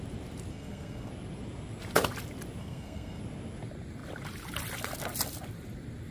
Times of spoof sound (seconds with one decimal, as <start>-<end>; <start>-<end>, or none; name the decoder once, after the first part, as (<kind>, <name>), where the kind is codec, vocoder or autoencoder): 0.5-1.1 (codec, SNAC); 2.6-3.2